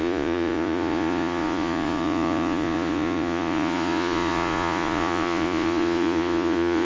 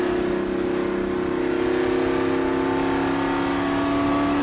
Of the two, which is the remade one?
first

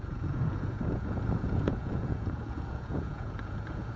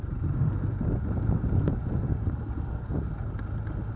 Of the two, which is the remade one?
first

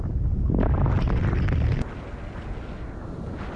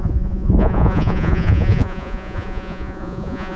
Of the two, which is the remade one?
second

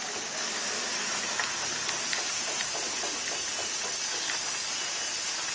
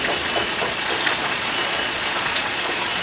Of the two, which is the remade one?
second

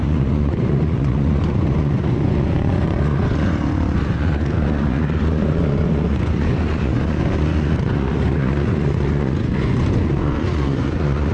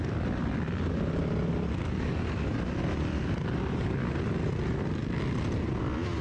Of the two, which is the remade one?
first